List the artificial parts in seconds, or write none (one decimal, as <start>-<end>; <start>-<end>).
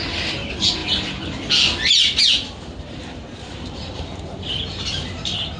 none